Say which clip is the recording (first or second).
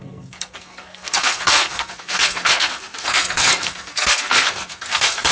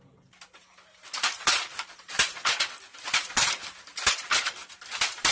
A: second